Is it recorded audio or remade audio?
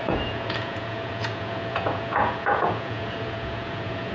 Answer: remade